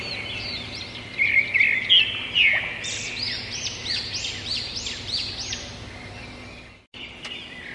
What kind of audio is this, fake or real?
real